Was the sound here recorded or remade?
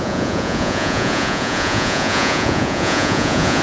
remade